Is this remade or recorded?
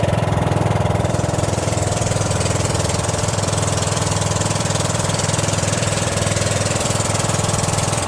remade